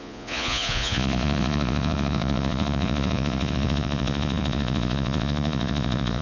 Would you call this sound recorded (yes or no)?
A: no